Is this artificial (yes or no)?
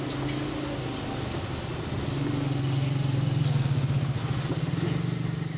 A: no